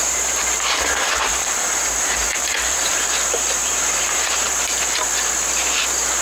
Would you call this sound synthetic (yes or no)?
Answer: yes